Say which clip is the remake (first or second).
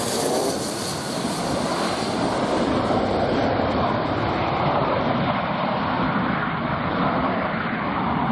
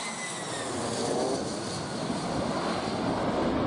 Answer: first